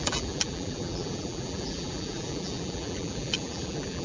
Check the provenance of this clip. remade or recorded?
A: remade